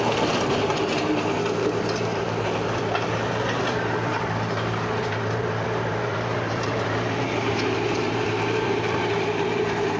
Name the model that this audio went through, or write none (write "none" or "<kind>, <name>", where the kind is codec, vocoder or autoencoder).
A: vocoder, BigVGAN v2